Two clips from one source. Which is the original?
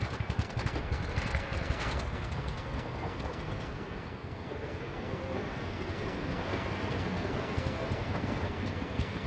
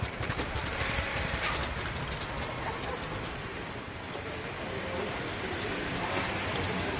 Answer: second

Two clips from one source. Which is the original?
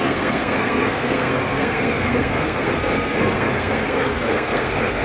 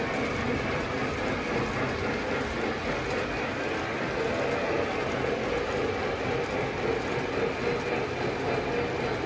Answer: second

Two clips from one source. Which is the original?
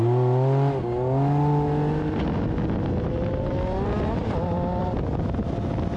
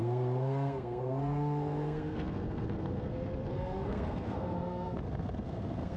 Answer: first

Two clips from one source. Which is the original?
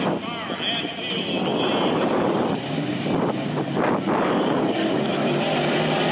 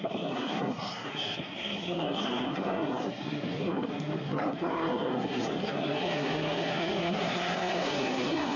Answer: first